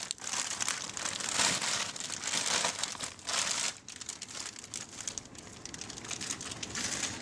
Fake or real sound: real